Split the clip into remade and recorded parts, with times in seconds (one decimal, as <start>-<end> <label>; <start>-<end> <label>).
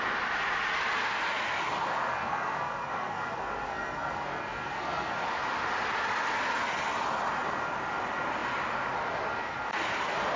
0.0-2.1 recorded; 2.1-5.1 remade; 5.1-10.4 recorded